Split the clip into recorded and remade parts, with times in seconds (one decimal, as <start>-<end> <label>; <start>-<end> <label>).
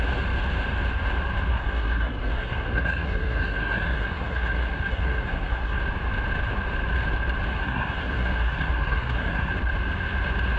0.0-1.5 recorded; 1.5-5.8 remade; 5.8-7.5 recorded; 7.5-9.5 remade; 9.5-10.6 recorded